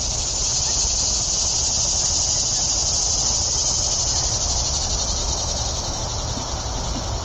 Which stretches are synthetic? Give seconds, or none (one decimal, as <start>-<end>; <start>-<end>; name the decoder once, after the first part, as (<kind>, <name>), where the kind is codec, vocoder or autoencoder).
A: 5.2-6.0 (autoencoder, DAC-VAE)